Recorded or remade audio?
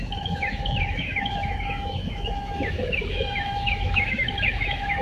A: remade